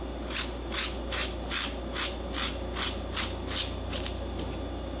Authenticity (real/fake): real